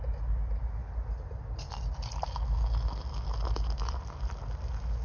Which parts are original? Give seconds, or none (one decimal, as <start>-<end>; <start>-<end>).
0.0-5.0